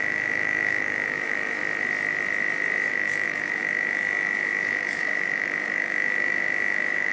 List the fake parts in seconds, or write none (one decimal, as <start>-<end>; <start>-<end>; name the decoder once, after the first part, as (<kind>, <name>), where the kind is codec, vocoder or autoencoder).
0.0-1.6 (autoencoder, DAC-VAE); 2.9-7.1